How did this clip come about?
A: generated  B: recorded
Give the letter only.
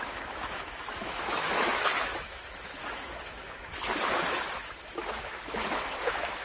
A